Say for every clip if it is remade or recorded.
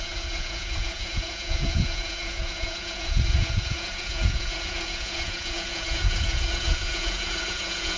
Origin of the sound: remade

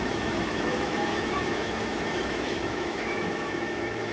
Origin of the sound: remade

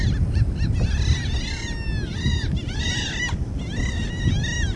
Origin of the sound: recorded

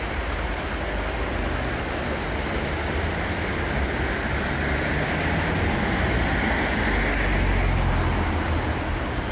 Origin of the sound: recorded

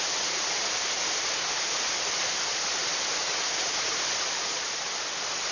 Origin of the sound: recorded